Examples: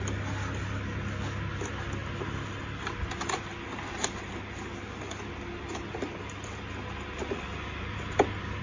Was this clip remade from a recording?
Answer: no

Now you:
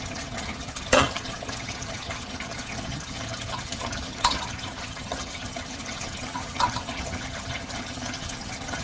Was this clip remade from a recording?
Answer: yes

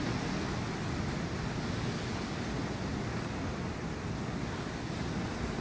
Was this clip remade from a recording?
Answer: no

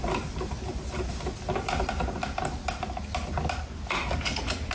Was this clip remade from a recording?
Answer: no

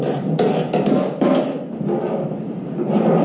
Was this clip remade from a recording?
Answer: no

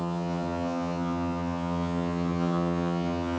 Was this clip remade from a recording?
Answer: yes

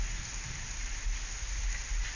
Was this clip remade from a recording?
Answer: no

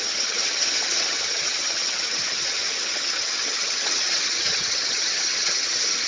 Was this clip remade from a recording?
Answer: yes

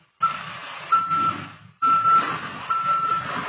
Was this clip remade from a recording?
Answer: no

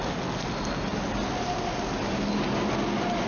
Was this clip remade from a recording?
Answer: no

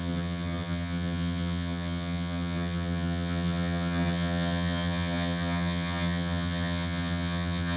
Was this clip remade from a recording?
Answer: yes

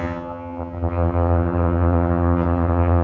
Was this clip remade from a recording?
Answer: yes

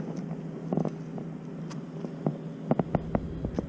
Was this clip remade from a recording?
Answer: no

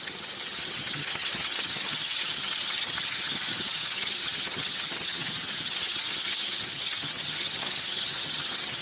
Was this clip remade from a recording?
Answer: yes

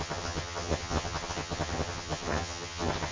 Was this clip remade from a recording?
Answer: yes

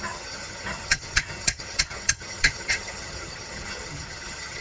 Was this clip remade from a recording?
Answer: yes